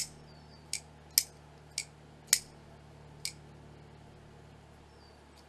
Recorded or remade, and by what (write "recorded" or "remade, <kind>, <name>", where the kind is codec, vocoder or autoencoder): recorded